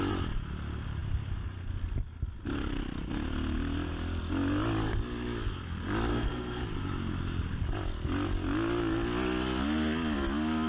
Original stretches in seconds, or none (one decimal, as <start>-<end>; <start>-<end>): 0.0-6.1; 6.6-10.7